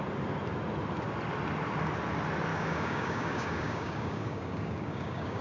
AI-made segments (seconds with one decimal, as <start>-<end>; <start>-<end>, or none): 2.5-5.4